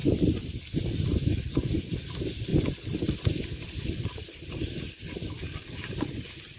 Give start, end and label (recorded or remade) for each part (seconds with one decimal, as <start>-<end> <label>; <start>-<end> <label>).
0.0-6.6 recorded

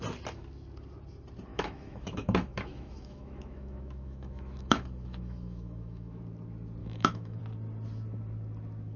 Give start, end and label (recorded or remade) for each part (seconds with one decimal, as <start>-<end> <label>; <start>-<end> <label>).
0.0-1.5 recorded; 1.5-6.2 remade; 6.2-6.8 recorded; 6.8-7.4 remade; 7.4-9.0 recorded

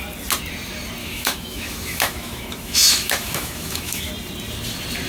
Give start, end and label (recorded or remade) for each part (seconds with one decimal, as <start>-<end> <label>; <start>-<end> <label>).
0.0-1.0 recorded; 1.0-4.1 remade; 4.1-5.1 recorded

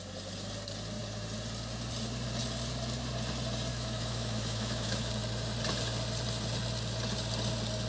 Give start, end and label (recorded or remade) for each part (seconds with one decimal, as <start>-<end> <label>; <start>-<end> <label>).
0.0-3.7 recorded; 3.7-5.1 remade; 5.1-7.9 recorded

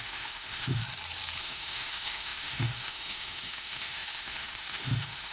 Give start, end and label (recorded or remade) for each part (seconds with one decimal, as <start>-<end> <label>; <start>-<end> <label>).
0.0-0.8 remade; 0.8-1.4 recorded; 1.4-5.3 remade

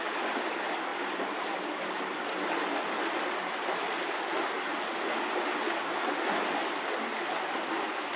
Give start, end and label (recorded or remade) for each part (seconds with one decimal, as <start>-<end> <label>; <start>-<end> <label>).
0.0-8.2 recorded

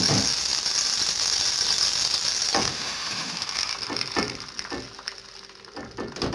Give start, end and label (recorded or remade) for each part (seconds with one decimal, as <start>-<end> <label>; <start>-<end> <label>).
0.0-2.6 recorded; 2.6-3.7 remade; 3.7-6.3 recorded

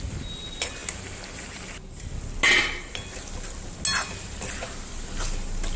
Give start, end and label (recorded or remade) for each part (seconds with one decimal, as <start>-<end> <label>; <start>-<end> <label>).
0.0-5.8 recorded